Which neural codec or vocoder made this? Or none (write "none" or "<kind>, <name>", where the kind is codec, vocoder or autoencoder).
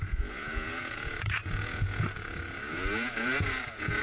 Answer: vocoder, Vocos